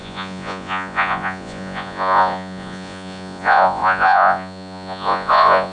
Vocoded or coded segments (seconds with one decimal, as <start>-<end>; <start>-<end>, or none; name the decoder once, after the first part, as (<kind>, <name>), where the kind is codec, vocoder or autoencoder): 0.0-5.7 (vocoder, Vocos)